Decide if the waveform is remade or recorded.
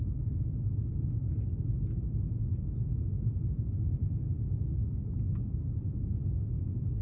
recorded